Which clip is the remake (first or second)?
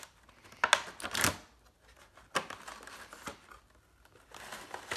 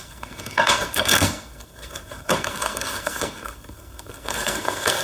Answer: second